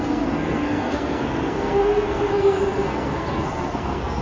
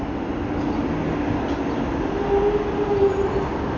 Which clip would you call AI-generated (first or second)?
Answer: first